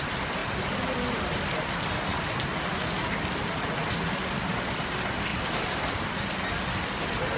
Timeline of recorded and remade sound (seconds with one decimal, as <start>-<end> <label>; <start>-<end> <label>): 0.0-0.4 recorded; 0.4-1.4 remade; 1.4-2.1 recorded; 2.1-2.7 remade; 2.7-3.8 recorded; 3.8-4.5 remade; 4.5-5.3 recorded; 5.3-6.5 remade; 6.5-7.4 recorded